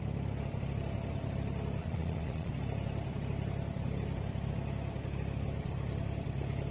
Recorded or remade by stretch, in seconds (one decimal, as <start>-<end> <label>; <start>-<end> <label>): 0.0-1.8 recorded; 1.8-2.5 remade; 2.5-6.7 recorded